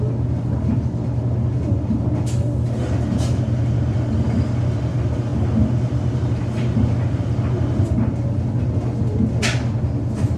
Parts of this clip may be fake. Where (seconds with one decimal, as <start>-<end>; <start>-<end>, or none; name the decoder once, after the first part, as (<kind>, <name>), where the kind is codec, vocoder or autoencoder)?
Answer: none